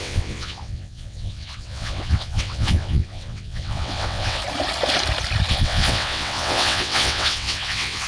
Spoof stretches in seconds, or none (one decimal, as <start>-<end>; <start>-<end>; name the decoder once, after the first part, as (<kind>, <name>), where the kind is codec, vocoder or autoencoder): 0.0-4.4 (vocoder, WaveNeXt); 5.5-8.1